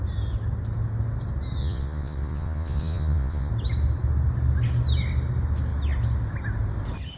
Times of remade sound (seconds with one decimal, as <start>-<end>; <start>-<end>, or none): 1.6-3.5